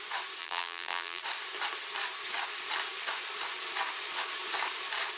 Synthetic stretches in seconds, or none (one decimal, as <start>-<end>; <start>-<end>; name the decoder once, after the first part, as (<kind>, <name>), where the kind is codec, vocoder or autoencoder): 0.4-1.2 (vocoder, BigVGAN v2)